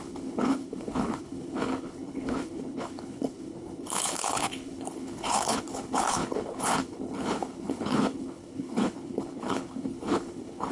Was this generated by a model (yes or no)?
yes